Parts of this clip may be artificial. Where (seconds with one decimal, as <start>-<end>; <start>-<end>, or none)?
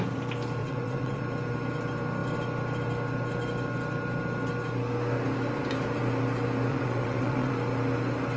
0.6-1.2; 6.7-7.5